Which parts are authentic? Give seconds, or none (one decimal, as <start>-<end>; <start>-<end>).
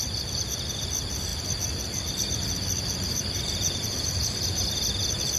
0.0-5.4